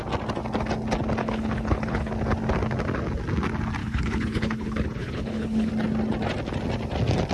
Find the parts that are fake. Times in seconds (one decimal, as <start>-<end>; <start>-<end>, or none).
1.2-2.1; 3.8-5.7